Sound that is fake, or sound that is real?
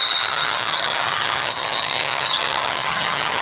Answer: fake